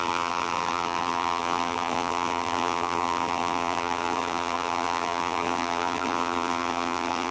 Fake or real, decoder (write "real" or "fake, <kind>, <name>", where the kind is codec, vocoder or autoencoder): fake, vocoder, BigVGAN v2